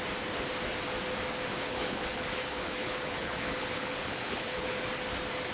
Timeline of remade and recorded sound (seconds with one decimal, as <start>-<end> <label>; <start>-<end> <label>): 0.0-1.5 recorded; 1.5-4.8 remade; 4.8-5.5 recorded